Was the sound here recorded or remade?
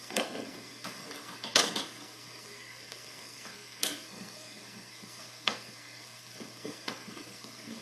remade